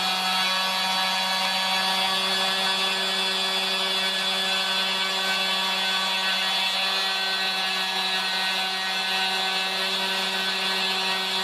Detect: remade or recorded recorded